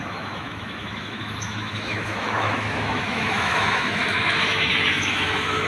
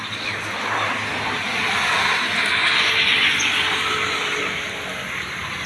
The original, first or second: second